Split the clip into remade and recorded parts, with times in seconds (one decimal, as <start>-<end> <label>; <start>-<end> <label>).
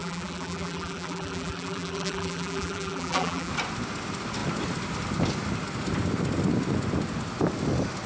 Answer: 0.0-3.5 remade; 3.5-8.1 recorded